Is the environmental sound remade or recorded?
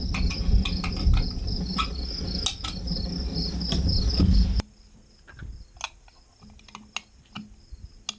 recorded